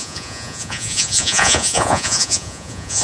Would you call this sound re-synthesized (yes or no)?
yes